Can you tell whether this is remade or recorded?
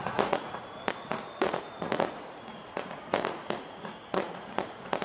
remade